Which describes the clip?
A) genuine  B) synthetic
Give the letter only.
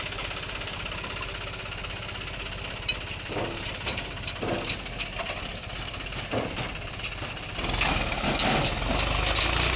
A